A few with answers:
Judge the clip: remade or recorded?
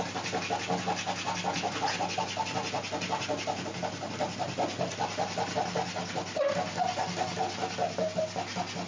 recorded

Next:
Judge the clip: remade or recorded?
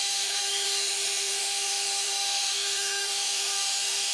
remade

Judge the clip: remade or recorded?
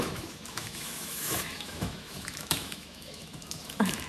remade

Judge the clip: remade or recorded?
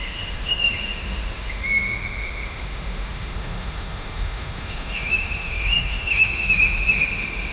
remade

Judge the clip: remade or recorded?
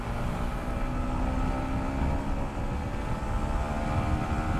recorded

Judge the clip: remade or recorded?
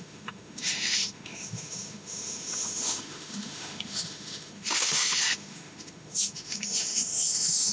remade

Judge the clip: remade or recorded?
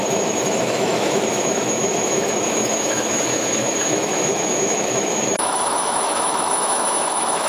remade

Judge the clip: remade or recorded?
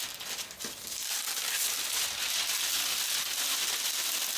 recorded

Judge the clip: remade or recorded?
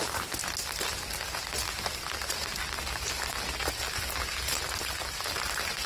recorded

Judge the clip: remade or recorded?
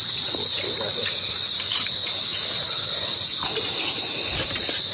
recorded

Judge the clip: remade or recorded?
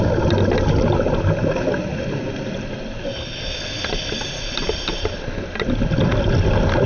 recorded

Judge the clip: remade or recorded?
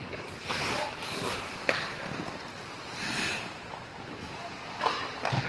recorded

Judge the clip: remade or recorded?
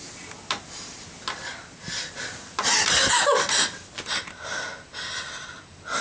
recorded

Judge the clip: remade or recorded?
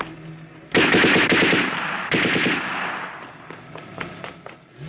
recorded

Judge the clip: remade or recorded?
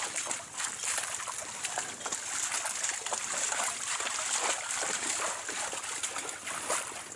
recorded